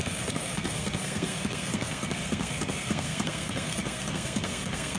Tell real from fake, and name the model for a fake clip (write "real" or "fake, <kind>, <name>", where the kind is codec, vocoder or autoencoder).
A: fake, codec, SNAC